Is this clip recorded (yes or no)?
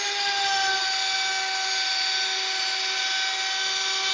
yes